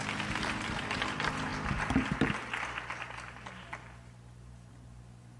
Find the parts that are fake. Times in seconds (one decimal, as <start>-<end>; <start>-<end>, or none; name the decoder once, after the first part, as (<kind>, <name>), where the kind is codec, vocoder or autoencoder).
none